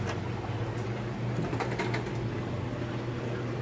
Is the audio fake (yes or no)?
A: no